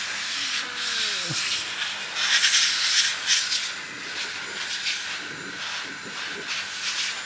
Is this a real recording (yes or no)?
yes